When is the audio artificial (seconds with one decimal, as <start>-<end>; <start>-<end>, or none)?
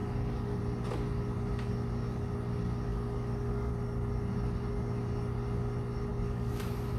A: 0.0-0.6; 2.9-3.7; 6.1-6.6